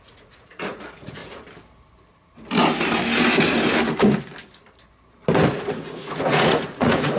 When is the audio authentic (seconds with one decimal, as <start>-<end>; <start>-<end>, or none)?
1.2-5.5